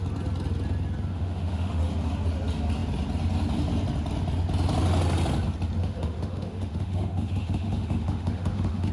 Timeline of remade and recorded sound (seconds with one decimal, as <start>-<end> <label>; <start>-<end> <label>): 0.0-1.1 recorded; 1.1-1.8 remade; 1.8-5.8 recorded; 5.8-8.9 remade